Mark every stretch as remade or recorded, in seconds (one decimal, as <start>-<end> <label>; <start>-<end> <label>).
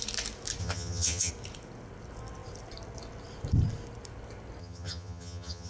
0.0-0.6 recorded; 0.6-1.3 remade; 1.3-4.6 recorded; 4.6-5.7 remade